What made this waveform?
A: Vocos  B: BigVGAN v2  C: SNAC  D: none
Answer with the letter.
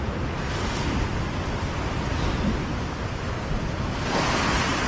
D